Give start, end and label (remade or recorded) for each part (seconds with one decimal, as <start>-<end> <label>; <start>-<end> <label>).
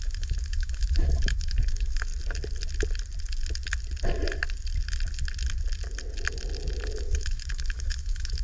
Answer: 0.0-2.1 remade; 2.1-7.0 recorded; 7.0-8.4 remade